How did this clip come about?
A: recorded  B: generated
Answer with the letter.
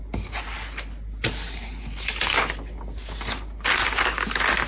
A